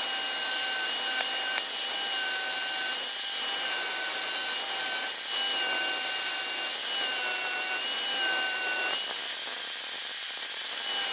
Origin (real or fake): real